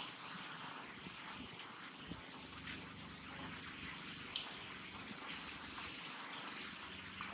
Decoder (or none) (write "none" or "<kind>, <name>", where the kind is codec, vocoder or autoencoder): none